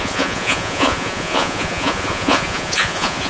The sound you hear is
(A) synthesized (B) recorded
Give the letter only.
A